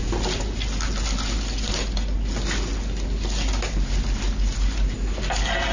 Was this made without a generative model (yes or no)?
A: yes